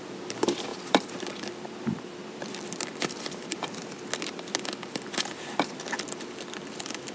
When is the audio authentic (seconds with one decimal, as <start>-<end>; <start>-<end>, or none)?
3.8-5.9